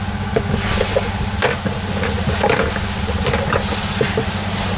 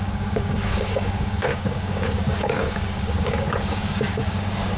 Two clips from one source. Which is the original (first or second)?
first